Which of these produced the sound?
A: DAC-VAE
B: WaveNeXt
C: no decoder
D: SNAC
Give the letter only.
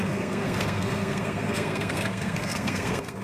D